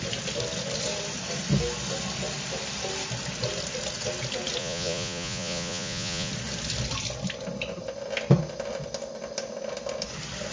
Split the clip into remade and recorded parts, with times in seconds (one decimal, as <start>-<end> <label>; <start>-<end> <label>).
0.0-4.6 recorded; 4.6-6.3 remade; 6.3-10.5 recorded